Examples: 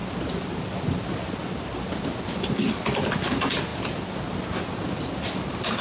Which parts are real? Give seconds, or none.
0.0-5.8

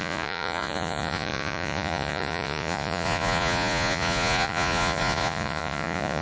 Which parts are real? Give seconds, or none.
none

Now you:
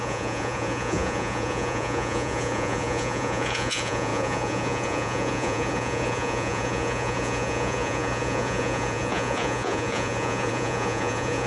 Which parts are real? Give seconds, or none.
none

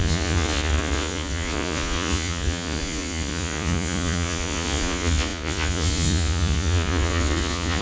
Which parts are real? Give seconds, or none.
none

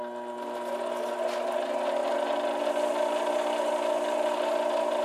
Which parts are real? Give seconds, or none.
0.0-5.0

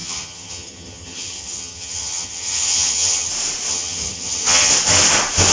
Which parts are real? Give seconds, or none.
3.3-3.7; 4.7-5.5